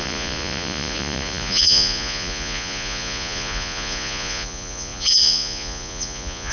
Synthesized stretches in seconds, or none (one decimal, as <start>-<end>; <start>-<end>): 0.0-6.5